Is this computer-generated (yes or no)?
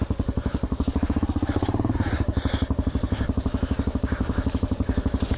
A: no